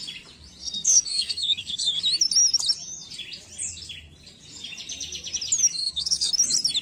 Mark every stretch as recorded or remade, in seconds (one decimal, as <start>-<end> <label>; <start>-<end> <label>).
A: 0.0-0.6 recorded; 0.6-2.0 remade; 2.0-5.7 recorded; 5.7-6.3 remade; 6.3-6.8 recorded